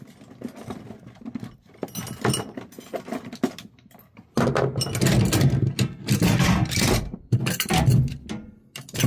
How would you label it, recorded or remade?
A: recorded